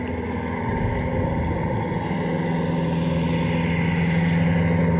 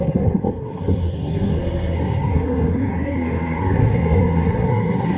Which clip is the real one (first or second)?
first